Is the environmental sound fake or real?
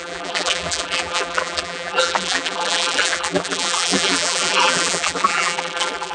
fake